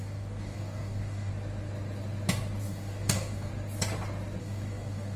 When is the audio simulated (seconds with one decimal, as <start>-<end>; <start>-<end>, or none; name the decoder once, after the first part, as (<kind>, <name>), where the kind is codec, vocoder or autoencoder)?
0.0-1.3 (codec, DAC); 2.6-3.5; 4.4-5.2